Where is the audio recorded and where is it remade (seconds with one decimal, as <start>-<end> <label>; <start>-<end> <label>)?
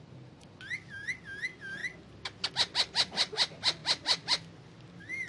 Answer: 0.0-5.3 recorded